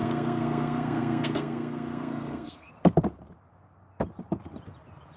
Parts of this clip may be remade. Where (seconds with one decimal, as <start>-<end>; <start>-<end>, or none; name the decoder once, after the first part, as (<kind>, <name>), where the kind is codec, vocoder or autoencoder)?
0.0-2.7 (codec, SNAC)